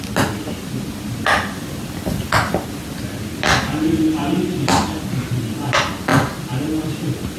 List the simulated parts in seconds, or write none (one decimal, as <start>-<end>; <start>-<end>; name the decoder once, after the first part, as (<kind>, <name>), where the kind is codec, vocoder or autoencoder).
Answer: 4.2-5.4 (vocoder, BigVGAN v2)